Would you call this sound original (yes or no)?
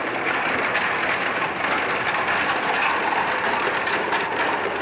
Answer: yes